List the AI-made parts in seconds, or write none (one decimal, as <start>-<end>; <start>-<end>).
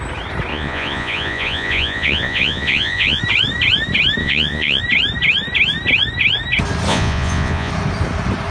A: 0.5-3.2; 4.2-4.8; 6.9-7.7